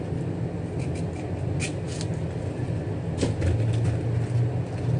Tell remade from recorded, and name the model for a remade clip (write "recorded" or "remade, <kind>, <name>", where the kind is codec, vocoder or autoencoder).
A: recorded